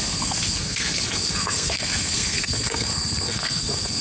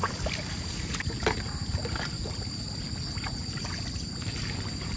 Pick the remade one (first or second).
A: first